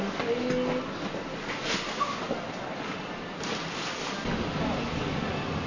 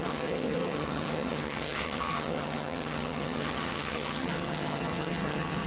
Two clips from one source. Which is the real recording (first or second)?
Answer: first